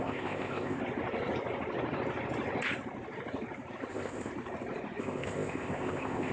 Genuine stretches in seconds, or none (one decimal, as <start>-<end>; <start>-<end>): 0.8-3.9; 4.3-5.0